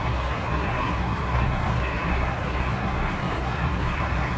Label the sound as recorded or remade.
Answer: remade